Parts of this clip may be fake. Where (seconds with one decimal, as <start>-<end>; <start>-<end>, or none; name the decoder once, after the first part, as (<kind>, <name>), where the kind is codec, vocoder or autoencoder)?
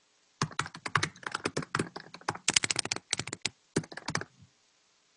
none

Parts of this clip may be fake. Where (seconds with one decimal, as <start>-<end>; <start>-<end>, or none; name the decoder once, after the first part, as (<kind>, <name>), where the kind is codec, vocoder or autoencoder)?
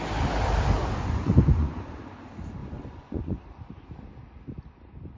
0.8-2.0 (vocoder, Vocos); 2.6-3.4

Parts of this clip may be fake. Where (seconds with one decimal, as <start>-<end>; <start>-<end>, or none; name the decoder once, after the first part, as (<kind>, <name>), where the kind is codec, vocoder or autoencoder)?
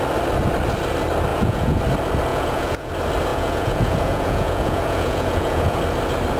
1.3-1.8 (vocoder, Vocos); 2.3-2.9; 3.3-5.8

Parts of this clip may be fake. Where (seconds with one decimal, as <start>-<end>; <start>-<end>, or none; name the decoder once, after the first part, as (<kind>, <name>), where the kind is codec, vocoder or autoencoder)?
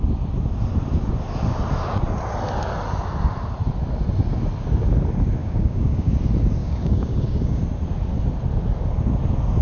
5.4-6.1 (codec, DAC); 6.6-7.6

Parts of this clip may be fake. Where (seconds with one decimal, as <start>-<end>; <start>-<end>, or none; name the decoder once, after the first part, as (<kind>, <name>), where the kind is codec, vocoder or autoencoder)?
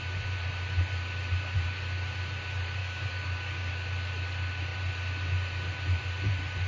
2.8-3.7 (codec, DAC)